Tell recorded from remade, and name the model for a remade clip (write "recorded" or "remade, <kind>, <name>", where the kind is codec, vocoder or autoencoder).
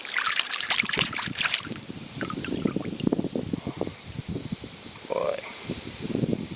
remade, vocoder, BigVGAN v2